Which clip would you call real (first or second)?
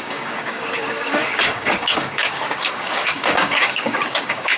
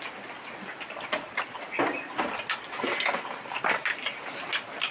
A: second